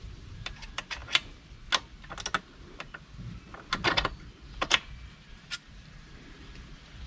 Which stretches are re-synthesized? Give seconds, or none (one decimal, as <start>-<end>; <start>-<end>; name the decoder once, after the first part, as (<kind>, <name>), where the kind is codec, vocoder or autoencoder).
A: 0.0-1.0 (vocoder, BigVGAN v2); 5.3-7.1